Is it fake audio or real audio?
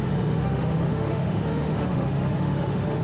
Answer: fake